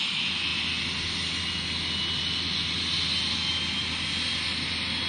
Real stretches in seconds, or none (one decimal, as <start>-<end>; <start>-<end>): 0.0-5.1

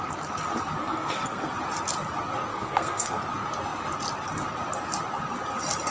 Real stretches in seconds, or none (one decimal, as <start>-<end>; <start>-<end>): 0.0-0.8; 1.5-2.5; 3.2-5.9